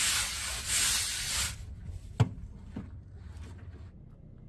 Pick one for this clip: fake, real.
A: real